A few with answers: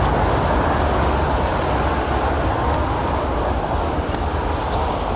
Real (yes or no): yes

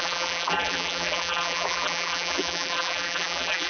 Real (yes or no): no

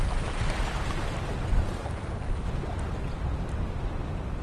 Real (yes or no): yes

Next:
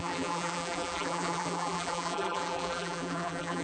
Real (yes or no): no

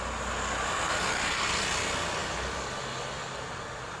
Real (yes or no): yes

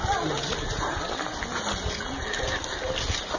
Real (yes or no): yes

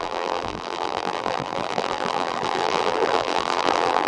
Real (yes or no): no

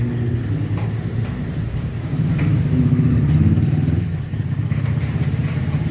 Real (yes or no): no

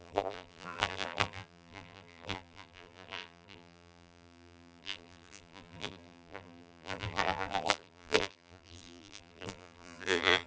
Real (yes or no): no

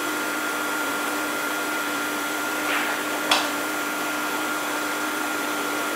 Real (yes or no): no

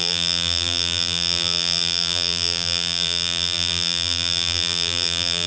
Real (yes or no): no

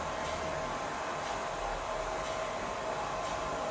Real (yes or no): yes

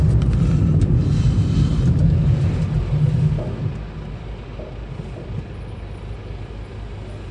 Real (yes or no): yes